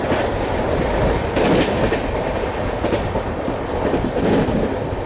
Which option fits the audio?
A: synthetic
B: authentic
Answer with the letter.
B